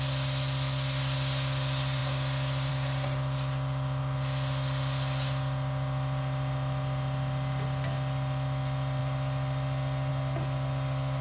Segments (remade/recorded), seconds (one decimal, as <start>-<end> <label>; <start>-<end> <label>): 0.0-11.2 recorded